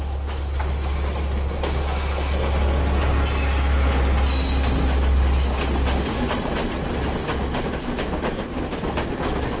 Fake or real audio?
real